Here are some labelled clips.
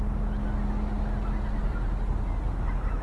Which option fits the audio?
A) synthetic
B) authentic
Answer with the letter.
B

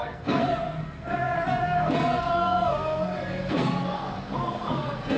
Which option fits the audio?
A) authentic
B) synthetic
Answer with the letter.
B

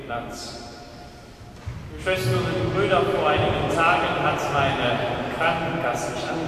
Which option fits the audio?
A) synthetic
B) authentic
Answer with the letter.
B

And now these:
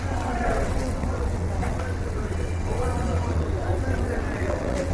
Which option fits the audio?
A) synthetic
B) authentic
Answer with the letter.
A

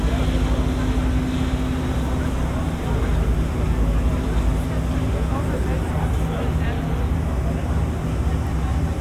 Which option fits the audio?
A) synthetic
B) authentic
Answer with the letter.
B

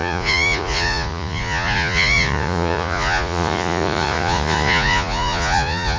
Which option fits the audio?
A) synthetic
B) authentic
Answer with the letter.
A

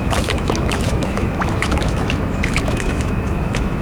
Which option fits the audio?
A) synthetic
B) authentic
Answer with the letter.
A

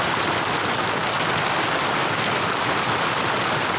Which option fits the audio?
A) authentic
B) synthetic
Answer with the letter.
A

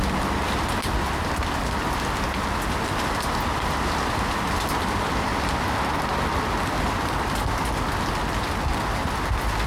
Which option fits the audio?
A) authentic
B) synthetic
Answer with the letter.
A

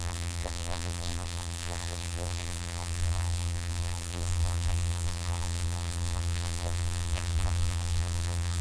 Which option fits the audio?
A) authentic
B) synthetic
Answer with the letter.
B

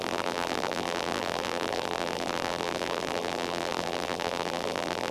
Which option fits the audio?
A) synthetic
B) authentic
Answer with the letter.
A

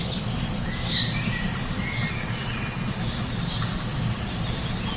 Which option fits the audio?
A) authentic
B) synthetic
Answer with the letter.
A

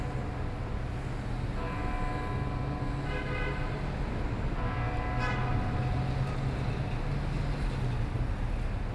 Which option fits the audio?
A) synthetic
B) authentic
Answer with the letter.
B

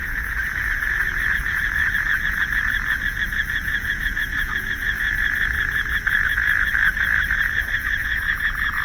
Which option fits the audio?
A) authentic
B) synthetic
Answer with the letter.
B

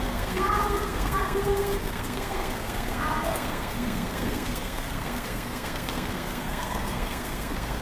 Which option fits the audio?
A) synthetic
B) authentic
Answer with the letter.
A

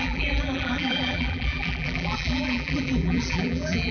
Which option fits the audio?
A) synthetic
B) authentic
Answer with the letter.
A